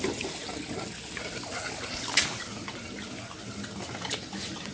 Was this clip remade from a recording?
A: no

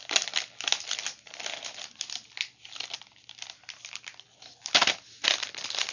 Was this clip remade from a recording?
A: no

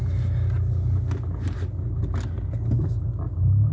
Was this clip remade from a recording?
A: no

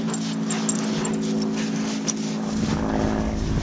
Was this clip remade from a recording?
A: no